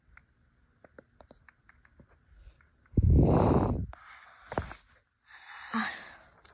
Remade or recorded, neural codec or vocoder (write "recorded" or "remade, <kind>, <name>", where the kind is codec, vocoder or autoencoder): recorded